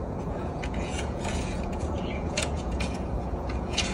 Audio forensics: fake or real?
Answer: fake